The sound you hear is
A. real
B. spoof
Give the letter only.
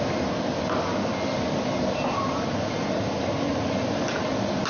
A